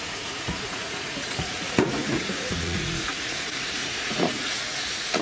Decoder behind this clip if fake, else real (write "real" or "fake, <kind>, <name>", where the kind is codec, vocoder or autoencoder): fake, vocoder, Vocos